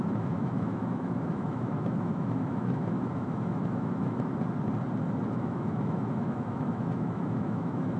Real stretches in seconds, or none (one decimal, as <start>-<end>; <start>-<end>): 4.3-5.4